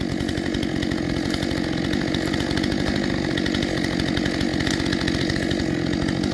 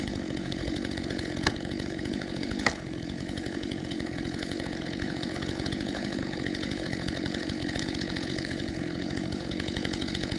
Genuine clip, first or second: first